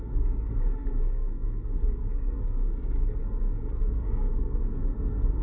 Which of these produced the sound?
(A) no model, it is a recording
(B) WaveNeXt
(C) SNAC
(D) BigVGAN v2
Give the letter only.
C